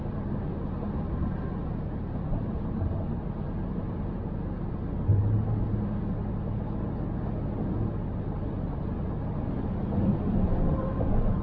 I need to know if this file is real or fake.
real